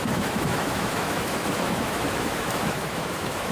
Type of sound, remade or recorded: remade